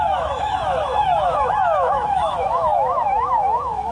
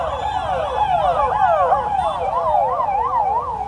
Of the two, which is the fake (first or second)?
first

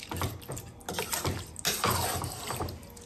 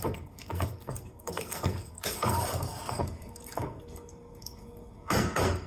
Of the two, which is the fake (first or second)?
second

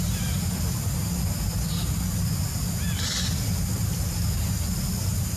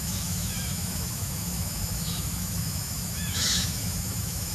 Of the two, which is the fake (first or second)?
second